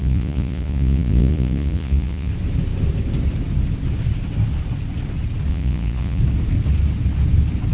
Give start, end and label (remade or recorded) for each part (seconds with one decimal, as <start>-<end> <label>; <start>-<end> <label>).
0.0-2.3 remade; 2.3-5.5 recorded; 5.5-6.2 remade; 6.2-7.7 recorded